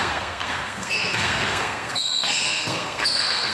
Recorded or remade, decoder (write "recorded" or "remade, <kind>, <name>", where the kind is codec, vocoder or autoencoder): remade, codec, SNAC